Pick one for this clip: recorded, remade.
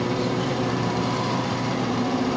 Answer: remade